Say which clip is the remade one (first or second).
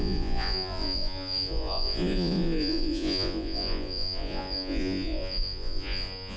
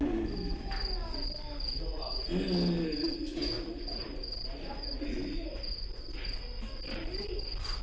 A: first